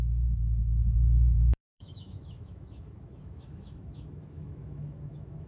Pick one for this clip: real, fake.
fake